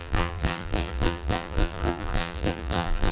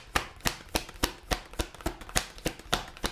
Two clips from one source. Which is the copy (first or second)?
first